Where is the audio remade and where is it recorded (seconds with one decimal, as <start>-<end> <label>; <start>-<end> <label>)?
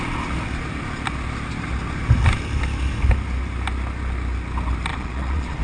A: 0.0-4.9 recorded; 4.9-5.6 remade